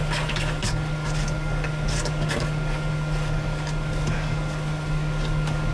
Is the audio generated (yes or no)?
yes